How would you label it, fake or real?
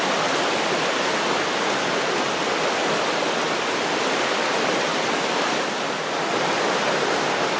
real